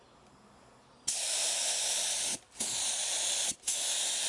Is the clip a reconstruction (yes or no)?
no